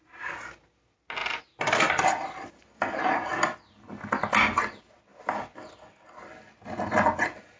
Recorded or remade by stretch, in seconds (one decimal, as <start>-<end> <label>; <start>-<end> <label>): 0.0-1.2 recorded; 1.2-2.5 remade; 2.5-7.6 recorded